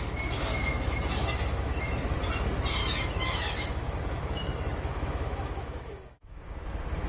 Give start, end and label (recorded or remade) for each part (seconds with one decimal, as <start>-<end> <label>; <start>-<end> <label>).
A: 0.0-0.5 recorded; 0.5-1.9 remade; 1.9-2.8 recorded; 2.8-6.4 remade; 6.4-7.1 recorded